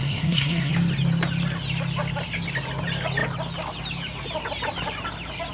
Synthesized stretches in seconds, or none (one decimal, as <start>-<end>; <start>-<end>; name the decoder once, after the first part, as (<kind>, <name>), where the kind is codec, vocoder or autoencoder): 0.0-0.7 (codec, SNAC)